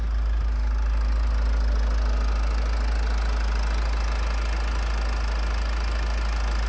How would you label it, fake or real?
real